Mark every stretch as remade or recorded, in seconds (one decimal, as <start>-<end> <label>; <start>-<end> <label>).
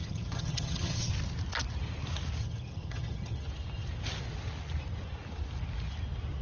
0.0-1.1 remade; 1.1-2.4 recorded; 2.4-3.5 remade; 3.5-6.4 recorded